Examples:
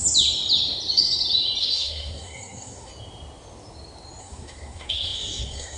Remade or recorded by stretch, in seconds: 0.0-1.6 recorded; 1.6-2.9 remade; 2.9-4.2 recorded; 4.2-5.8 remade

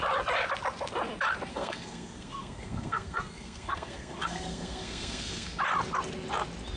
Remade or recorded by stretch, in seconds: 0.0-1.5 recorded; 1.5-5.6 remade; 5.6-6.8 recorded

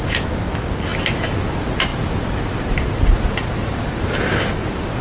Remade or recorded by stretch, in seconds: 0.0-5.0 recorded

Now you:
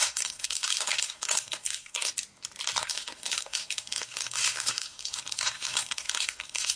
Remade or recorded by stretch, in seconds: 0.0-2.1 remade; 2.1-2.8 recorded; 2.8-6.8 remade

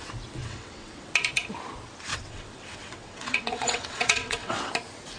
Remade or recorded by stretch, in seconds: 0.0-0.4 recorded; 0.4-1.1 remade; 1.1-2.1 recorded; 2.1-4.7 remade; 4.7-5.2 recorded

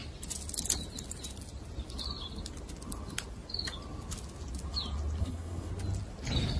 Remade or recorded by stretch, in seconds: 0.0-5.2 recorded; 5.2-5.7 remade; 5.7-6.6 recorded

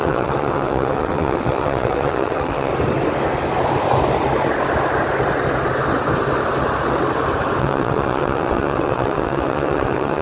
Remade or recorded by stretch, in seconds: 0.0-2.7 remade; 2.7-7.6 recorded; 7.6-10.2 remade